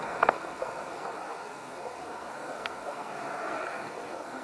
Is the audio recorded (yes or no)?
no